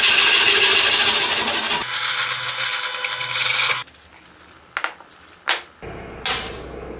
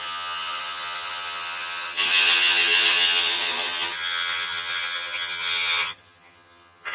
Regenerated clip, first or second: second